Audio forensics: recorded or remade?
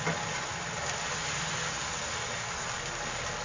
recorded